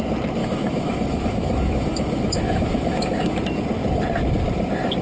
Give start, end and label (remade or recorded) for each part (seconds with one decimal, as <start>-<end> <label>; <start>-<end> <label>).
0.0-0.4 recorded; 0.4-3.4 remade; 3.4-5.0 recorded